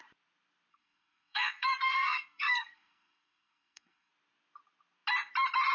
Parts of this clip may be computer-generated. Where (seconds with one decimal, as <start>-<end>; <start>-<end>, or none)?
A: 0.7-4.1